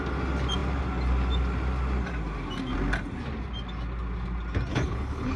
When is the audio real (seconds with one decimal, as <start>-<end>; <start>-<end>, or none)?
0.0-4.7